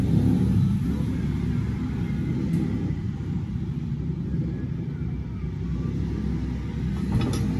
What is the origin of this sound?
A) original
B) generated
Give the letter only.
A